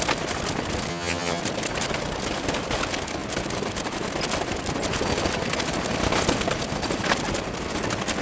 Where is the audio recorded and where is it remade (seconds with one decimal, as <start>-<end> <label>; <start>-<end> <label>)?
0.0-0.9 recorded; 0.9-1.4 remade; 1.4-8.2 recorded